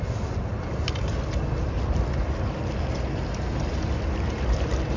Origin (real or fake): real